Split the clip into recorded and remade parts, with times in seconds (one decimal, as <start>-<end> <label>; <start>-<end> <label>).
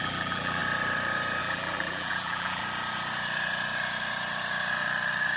0.0-0.6 remade; 0.6-1.4 recorded; 1.4-2.6 remade; 2.6-5.4 recorded